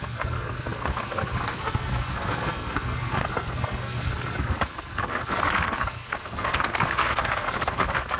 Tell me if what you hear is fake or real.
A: fake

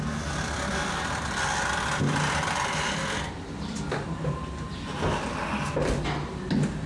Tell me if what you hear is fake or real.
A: real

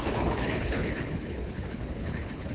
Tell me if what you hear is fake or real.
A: fake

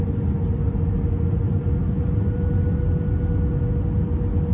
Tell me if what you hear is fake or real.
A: real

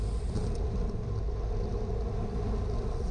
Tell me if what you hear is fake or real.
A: real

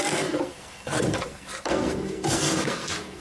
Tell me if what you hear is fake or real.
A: fake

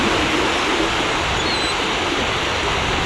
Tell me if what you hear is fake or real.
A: real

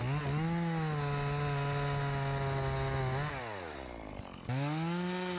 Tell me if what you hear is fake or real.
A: real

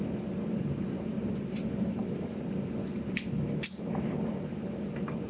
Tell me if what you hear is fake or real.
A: real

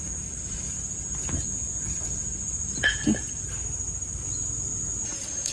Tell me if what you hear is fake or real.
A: real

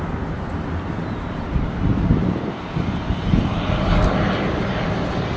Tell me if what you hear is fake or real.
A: real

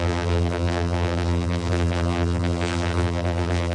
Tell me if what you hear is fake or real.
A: fake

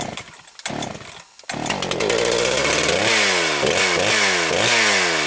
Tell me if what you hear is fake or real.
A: real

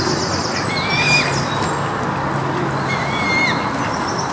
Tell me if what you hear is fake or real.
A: real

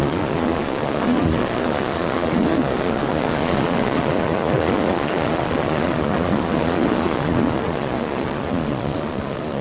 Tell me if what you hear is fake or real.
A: fake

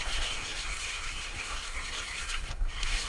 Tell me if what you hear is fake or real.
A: fake